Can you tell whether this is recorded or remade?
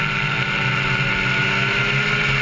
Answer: recorded